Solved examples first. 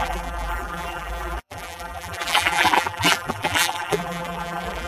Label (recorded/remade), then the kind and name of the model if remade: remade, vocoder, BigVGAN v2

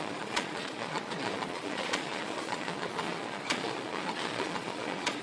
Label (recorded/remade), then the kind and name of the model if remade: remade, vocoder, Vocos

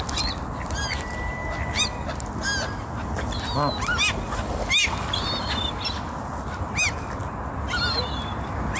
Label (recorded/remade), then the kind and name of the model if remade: recorded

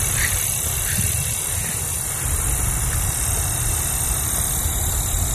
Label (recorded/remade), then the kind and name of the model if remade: recorded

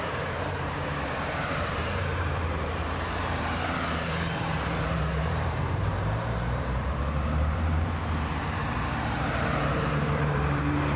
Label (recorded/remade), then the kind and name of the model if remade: remade, vocoder, BigVGAN v2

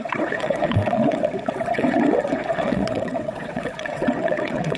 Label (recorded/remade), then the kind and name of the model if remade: remade, vocoder, WaveNeXt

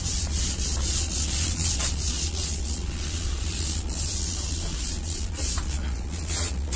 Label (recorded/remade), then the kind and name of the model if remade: remade, vocoder, Vocos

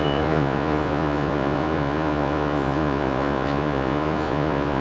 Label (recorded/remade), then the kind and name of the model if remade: remade, vocoder, Vocos